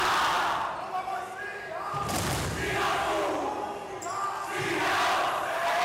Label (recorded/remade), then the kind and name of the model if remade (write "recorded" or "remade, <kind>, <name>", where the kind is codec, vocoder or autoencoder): recorded